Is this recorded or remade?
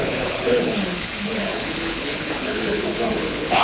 remade